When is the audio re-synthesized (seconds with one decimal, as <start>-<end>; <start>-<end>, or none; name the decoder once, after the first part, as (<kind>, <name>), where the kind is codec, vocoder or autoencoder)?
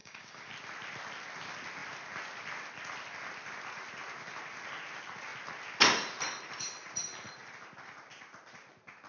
0.0-0.5 (codec, DAC)